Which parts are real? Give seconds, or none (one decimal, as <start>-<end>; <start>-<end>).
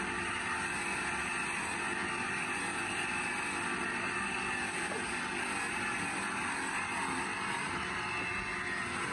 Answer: 0.0-9.1